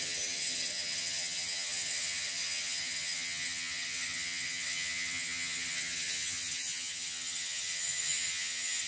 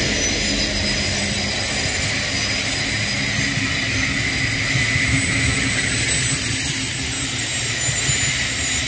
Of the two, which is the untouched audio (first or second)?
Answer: second